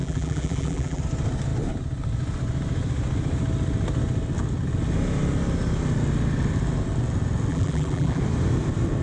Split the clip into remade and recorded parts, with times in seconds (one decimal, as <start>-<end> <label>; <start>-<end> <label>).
0.0-1.0 remade; 1.0-7.5 recorded; 7.5-8.2 remade; 8.2-9.0 recorded